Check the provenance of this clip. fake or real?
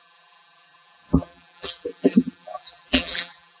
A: fake